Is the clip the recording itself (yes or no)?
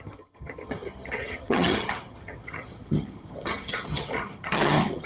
no